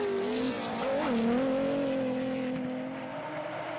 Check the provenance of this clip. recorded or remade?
recorded